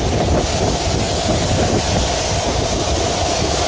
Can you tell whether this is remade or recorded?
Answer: recorded